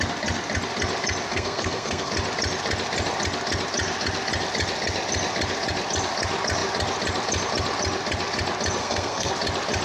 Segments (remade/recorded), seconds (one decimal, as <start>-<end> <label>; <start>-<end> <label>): 0.0-1.3 recorded; 1.3-2.1 remade; 2.1-8.8 recorded; 8.8-9.3 remade; 9.3-9.8 recorded